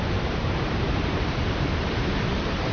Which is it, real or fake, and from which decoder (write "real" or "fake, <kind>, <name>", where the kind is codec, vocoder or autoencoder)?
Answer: fake, vocoder, BigVGAN v2